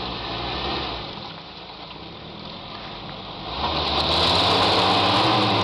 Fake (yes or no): no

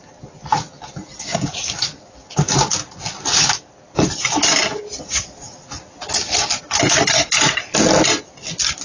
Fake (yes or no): no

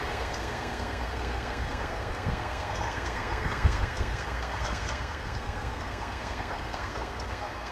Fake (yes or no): yes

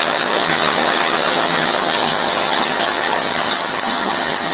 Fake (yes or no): yes